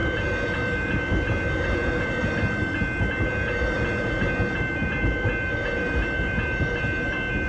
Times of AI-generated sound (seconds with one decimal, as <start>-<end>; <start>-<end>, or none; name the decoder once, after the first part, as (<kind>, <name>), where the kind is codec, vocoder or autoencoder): none